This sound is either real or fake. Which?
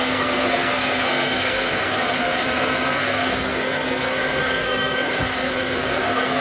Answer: fake